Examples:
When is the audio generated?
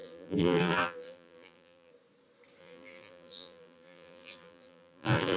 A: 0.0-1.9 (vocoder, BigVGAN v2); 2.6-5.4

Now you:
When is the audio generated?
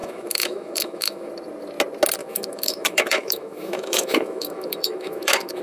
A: 0.0-1.3 (autoencoder, DAC-VAE); 2.2-5.6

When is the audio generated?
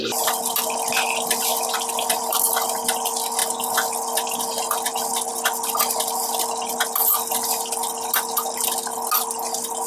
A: none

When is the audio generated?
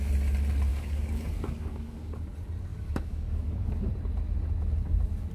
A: 0.7-2.3 (codec, DAC); 2.7-3.9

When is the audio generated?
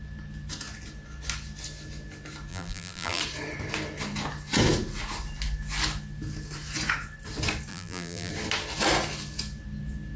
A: 2.5-3.2 (vocoder, BigVGAN v2); 7.7-8.3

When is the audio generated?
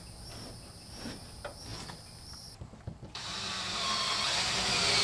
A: 1.7-3.5 (vocoder, BigVGAN v2)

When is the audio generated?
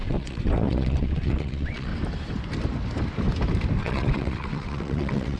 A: 0.0-1.9 (vocoder, WaveNeXt); 3.8-5.4